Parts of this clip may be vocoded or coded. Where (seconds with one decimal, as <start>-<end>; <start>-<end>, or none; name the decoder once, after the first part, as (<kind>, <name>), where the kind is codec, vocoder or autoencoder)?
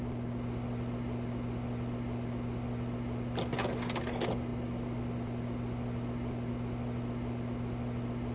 none